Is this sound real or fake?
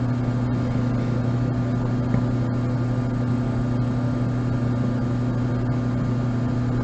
real